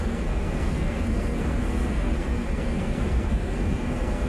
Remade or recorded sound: remade